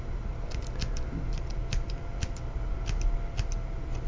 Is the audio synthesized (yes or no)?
no